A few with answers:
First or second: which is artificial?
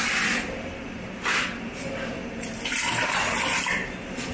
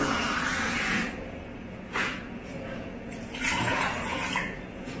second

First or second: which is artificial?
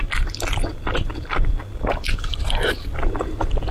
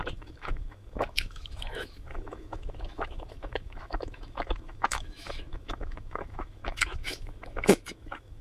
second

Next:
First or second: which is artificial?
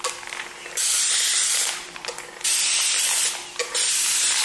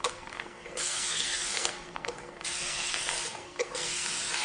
second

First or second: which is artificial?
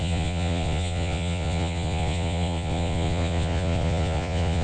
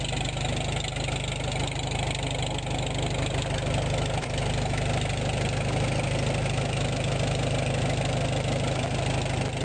first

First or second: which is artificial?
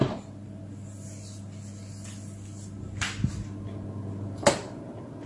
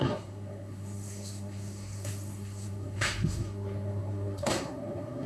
second